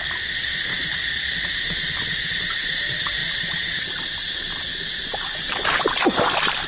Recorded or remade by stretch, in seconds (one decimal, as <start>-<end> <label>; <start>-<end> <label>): 0.0-0.7 recorded; 0.7-1.5 remade; 1.5-6.7 recorded